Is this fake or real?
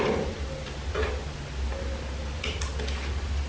real